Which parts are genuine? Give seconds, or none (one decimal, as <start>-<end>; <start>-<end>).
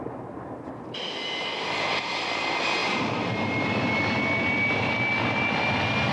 0.0-1.4; 2.1-2.8; 3.9-6.1